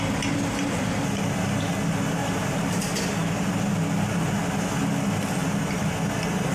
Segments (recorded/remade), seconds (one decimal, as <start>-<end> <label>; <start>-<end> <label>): 0.0-2.2 recorded; 2.2-2.8 remade; 2.8-5.4 recorded; 5.4-6.0 remade; 6.0-6.5 recorded

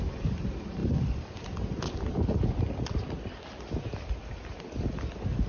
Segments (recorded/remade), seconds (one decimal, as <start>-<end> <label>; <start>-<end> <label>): 0.0-5.5 recorded

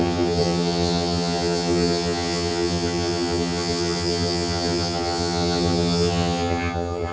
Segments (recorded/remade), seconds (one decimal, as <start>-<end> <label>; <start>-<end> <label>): 0.0-7.1 remade